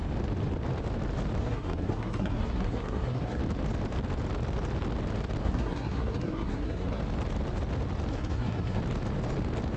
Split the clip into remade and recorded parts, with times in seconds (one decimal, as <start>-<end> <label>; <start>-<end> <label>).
0.0-1.4 recorded; 1.4-3.4 remade; 3.4-5.4 recorded; 5.4-7.0 remade; 7.0-8.1 recorded; 8.1-8.8 remade; 8.8-9.8 recorded